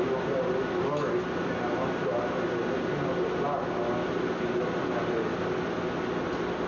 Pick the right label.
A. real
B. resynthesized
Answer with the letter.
A